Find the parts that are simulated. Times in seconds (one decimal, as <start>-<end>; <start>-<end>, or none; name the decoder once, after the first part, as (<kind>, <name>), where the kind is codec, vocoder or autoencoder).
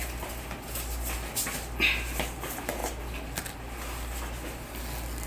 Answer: none